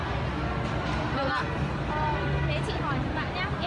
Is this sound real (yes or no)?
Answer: yes